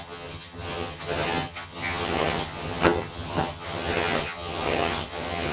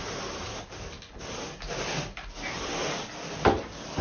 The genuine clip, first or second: second